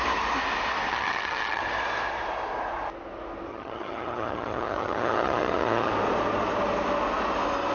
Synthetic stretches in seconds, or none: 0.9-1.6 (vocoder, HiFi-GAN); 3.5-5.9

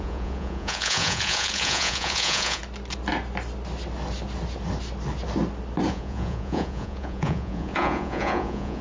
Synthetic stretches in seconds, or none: 0.0-2.6 (vocoder, Vocos); 5.9-8.8

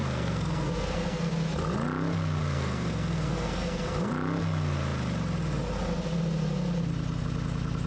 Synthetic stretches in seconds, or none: 0.0-1.3 (codec, SNAC); 2.4-4.1

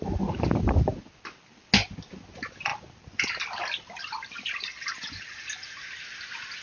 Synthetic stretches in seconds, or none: none

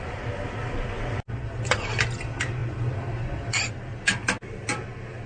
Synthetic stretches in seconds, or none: none

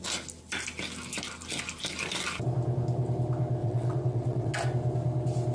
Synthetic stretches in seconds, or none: 3.6-4.5 (vocoder, WaveNeXt)

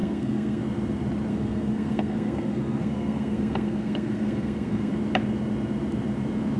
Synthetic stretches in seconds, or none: 0.0-0.6 (codec, SNAC); 1.3-4.9

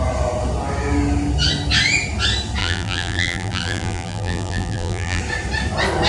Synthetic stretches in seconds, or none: 2.6-5.2 (vocoder, BigVGAN v2)